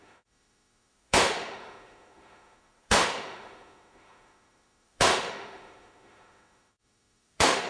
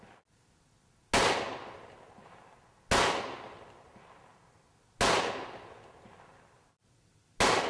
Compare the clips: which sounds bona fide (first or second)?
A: second